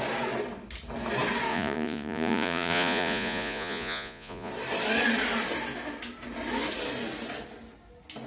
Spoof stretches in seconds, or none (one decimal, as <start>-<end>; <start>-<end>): 1.5-4.5